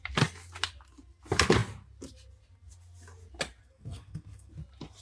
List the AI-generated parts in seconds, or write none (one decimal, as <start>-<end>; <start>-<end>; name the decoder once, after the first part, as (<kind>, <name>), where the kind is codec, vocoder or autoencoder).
3.6-4.5 (codec, SNAC)